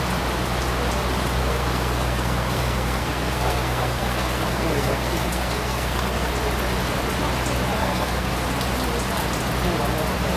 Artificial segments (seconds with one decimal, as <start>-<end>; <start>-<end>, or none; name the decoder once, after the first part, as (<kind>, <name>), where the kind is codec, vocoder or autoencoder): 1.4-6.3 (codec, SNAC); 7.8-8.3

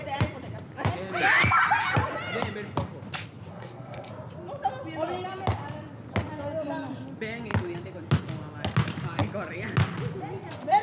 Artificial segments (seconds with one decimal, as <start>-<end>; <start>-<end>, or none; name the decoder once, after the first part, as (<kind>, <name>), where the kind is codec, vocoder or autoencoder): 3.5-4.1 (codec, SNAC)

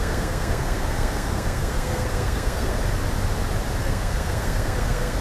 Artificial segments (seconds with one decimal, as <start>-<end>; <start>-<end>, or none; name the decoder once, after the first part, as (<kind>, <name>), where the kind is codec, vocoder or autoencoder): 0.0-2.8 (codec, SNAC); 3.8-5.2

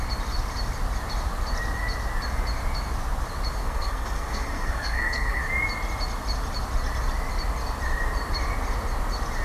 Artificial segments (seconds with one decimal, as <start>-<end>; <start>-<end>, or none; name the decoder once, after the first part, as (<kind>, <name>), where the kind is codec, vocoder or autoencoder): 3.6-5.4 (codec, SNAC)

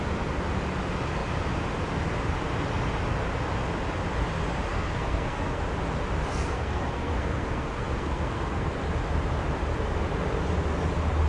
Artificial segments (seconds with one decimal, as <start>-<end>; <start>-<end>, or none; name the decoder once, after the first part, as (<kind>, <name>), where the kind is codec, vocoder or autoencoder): 4.7-5.6 (codec, SNAC); 6.3-8.7

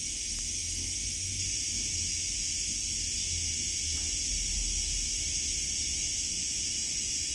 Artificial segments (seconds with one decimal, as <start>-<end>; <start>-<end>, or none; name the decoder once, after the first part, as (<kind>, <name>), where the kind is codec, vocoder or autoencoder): none